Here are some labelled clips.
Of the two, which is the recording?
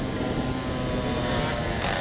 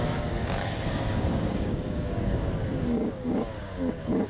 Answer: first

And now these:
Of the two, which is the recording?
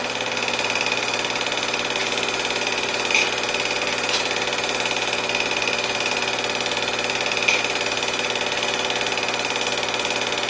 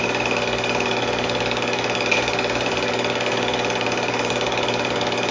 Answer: first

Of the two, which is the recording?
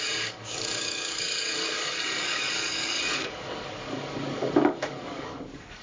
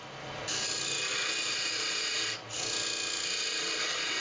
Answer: second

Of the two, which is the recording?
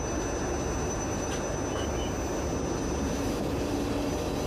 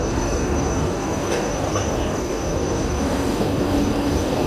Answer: first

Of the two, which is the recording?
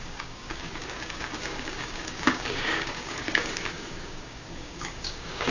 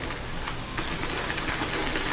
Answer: second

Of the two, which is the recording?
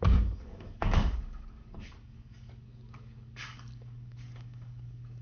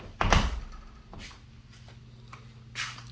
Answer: second